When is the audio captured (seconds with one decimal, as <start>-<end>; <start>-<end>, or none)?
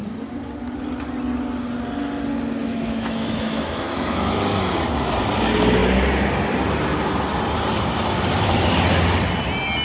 0.0-2.6; 4.3-9.8